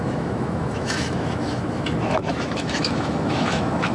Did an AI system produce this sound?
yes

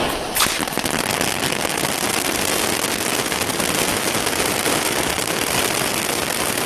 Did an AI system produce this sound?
no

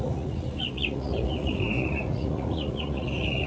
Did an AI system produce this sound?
yes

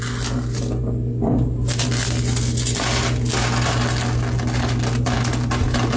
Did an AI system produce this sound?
no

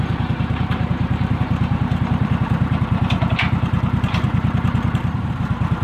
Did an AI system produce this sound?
yes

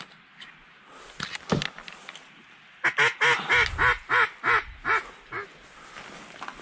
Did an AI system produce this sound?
no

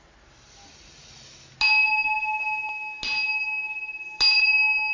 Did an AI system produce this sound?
no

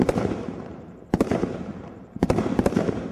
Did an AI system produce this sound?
yes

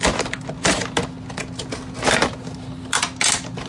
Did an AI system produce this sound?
no